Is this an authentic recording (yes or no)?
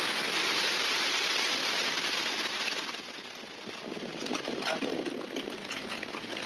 yes